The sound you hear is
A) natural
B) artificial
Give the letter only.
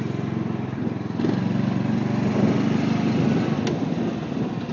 A